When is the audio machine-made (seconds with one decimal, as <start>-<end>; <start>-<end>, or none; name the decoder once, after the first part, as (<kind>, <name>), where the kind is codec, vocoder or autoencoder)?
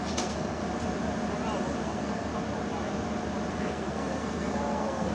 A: 0.0-0.6 (codec, SNAC); 1.8-2.3; 3.5-5.1